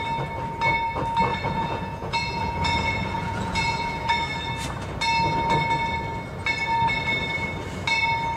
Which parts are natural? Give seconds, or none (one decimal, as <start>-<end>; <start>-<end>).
0.0-1.3; 4.5-8.4